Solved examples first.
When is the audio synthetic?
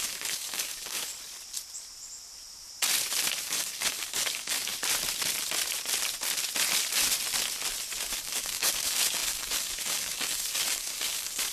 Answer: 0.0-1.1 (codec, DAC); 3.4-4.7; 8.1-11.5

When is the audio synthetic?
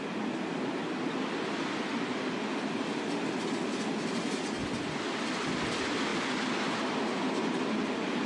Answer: none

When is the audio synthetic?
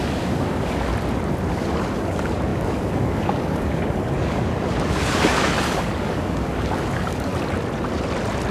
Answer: 0.0-0.9 (codec, DAC); 1.5-7.3